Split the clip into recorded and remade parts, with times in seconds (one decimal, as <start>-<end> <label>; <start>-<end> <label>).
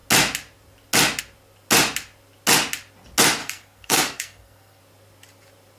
0.0-3.4 recorded; 3.4-4.8 remade; 4.8-5.8 recorded